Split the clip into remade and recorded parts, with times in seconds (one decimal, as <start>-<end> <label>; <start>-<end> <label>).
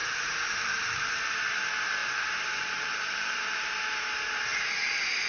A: 0.0-1.3 remade; 1.3-2.0 recorded; 2.0-4.0 remade; 4.0-5.3 recorded